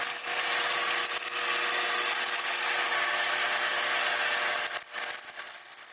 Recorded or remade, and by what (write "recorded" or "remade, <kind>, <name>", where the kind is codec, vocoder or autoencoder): recorded